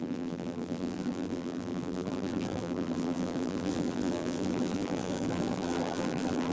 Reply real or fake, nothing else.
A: fake